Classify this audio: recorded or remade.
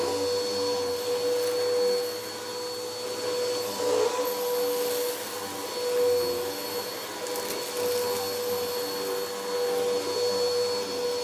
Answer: recorded